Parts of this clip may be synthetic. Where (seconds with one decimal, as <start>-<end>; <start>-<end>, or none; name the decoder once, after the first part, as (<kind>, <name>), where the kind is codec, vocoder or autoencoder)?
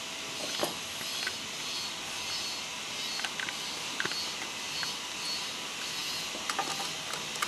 0.6-1.2 (autoencoder, DAC-VAE)